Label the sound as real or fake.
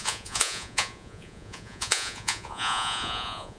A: fake